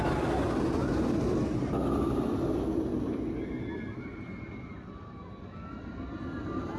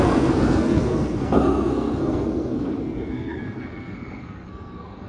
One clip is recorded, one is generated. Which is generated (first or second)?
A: second